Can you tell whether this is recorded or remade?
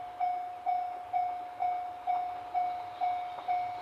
recorded